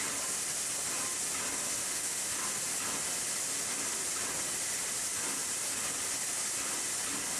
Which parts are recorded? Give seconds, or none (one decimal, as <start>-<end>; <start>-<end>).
0.0-1.8; 2.3-7.4